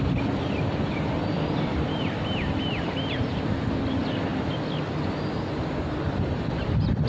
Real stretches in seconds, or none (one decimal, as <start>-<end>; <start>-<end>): 4.3-6.1